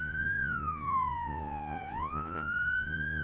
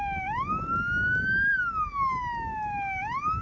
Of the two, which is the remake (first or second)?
first